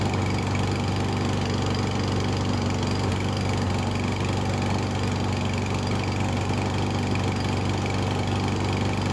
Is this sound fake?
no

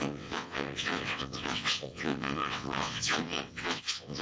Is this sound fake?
yes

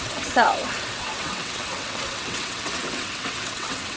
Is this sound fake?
yes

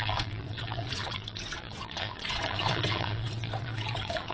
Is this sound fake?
yes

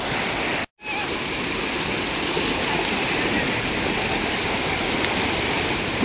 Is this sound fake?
no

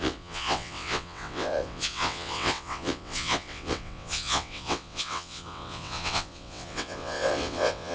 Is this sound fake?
yes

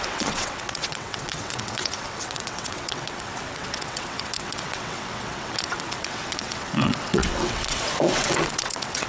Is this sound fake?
yes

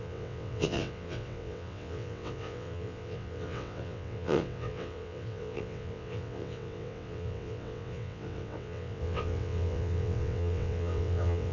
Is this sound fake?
yes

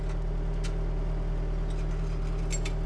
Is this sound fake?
no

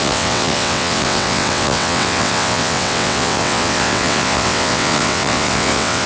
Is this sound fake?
yes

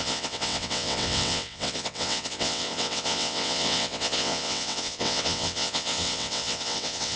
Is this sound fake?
yes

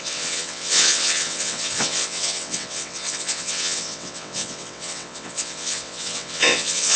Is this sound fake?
yes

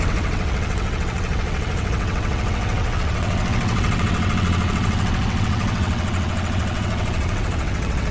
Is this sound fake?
yes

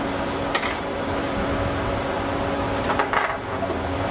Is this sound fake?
no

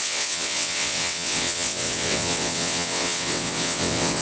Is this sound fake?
yes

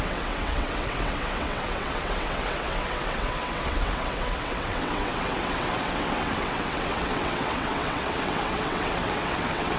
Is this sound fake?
yes